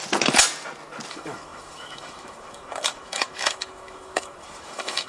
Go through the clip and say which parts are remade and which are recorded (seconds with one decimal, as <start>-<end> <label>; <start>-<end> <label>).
0.0-1.1 recorded; 1.1-5.1 remade